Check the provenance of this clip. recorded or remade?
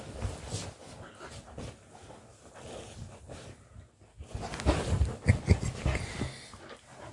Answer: recorded